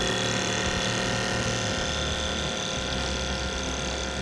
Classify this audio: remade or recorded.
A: recorded